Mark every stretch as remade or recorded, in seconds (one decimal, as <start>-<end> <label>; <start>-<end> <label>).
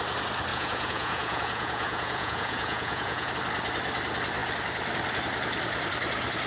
0.0-0.5 recorded; 0.5-3.3 remade; 3.3-6.5 recorded